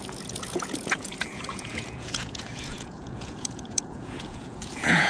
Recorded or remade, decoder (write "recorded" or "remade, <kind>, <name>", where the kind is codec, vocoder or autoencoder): remade, vocoder, Vocos